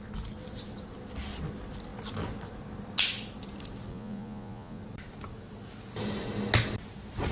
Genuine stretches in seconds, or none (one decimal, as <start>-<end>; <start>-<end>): 0.0-3.9; 4.8-7.3